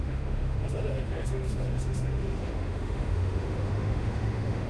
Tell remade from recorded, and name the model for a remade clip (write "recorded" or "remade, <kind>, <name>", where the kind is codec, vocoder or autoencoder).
remade, autoencoder, DAC-VAE